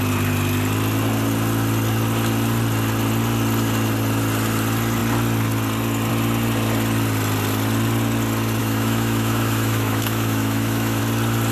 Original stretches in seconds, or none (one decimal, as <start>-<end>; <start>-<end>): 0.0-8.6; 11.0-11.5